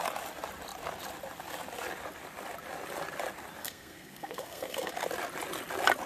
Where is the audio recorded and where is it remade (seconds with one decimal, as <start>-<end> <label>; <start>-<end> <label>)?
0.0-3.6 recorded; 3.6-4.9 remade; 4.9-6.1 recorded